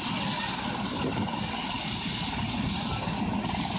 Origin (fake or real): real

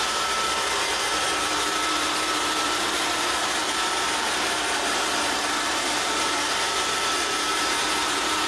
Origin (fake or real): fake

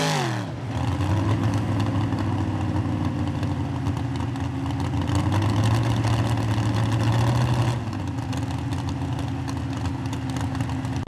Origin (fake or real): real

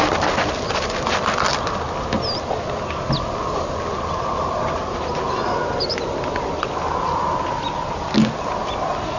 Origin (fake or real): real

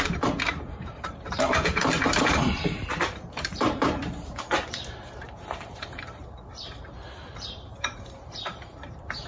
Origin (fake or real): fake